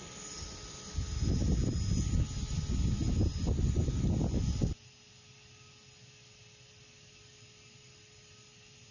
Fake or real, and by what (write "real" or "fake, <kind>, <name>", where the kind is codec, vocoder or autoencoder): real